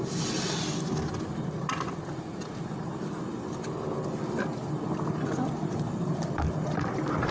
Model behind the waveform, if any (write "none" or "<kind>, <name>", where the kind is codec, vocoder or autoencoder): none